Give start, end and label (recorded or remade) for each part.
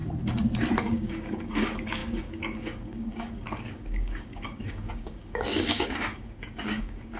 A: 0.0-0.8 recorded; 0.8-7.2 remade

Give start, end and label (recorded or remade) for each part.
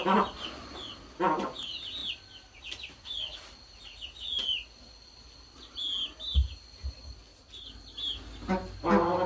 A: 0.0-9.3 recorded